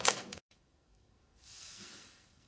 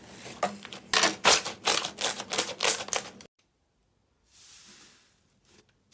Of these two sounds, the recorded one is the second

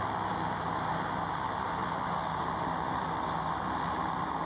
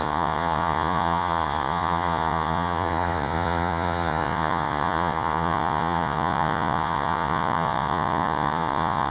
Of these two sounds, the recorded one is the first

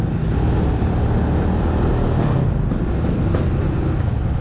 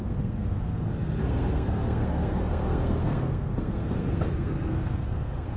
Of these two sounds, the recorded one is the first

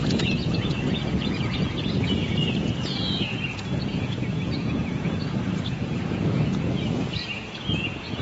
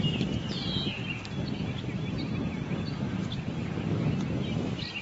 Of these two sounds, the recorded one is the second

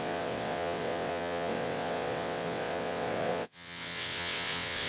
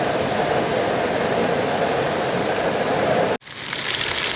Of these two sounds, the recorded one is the second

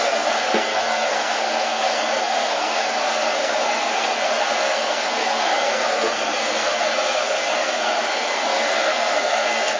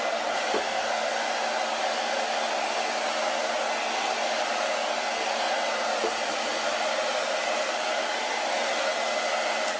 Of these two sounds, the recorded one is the second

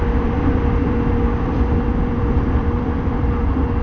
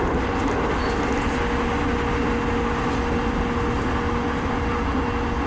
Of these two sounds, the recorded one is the second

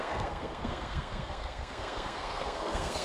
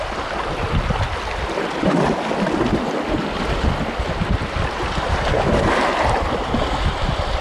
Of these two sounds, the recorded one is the second